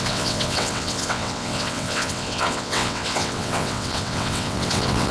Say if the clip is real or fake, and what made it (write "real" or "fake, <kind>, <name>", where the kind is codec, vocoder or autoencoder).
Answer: fake, vocoder, WaveNeXt